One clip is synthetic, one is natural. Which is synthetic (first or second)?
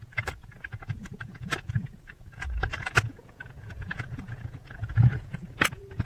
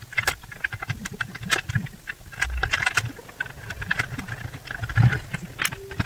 first